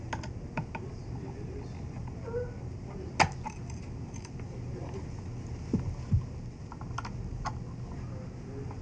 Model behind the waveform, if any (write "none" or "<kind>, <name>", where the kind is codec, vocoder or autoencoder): none